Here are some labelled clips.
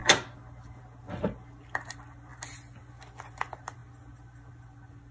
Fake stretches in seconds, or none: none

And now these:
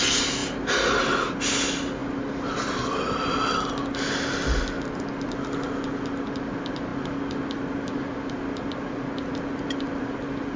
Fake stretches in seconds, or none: none

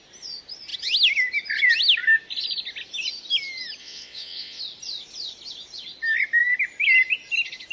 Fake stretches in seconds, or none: 3.8-4.6 (vocoder, WaveNeXt)

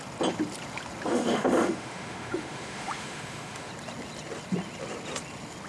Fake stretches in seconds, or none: 1.1-3.7 (autoencoder, DAC-VAE)

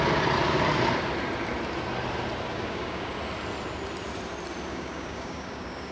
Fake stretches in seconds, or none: 2.5-3.1 (codec, DAC); 4.7-5.9

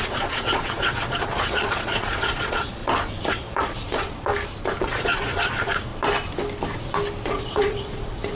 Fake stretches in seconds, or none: 0.0-2.8 (vocoder, Vocos); 3.3-4.3; 4.8-5.9; 7.3-8.3

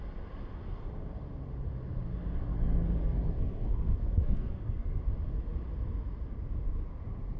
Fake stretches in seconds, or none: 2.5-5.0 (codec, SNAC)

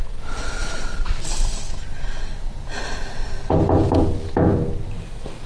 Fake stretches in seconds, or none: 0.6-1.6 (vocoder, BigVGAN v2)